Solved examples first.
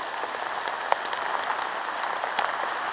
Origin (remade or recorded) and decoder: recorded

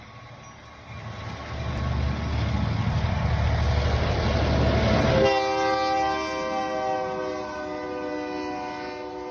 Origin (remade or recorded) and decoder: recorded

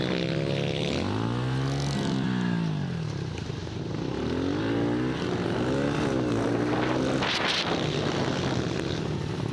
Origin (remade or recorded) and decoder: recorded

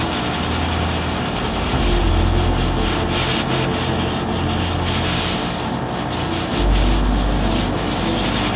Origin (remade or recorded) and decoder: recorded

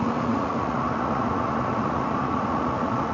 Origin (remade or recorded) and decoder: remade, vocoder, Vocos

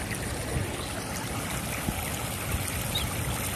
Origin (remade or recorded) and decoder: recorded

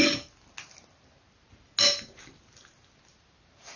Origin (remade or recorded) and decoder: recorded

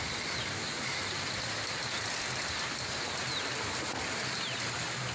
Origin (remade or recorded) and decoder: recorded